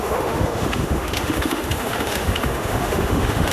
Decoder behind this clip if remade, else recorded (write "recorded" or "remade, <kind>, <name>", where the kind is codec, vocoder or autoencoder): remade, autoencoder, DAC-VAE